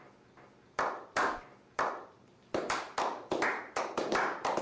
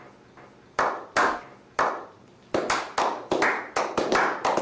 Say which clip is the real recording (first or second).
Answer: second